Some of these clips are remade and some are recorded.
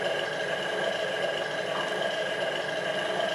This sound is recorded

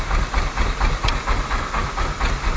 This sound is recorded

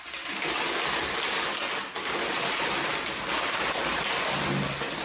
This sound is recorded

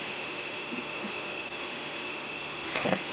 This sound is remade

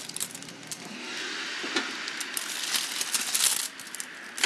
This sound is recorded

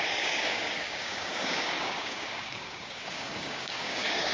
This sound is remade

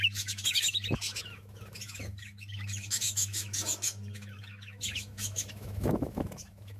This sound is remade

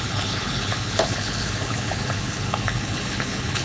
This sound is remade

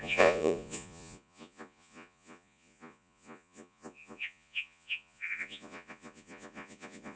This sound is remade